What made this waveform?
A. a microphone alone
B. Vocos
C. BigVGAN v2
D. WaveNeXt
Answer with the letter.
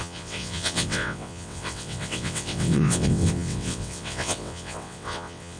D